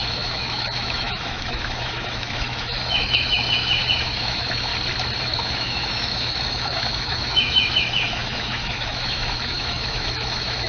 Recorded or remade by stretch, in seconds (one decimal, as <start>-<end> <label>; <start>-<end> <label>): 0.0-4.7 remade; 4.7-5.2 recorded; 5.2-10.7 remade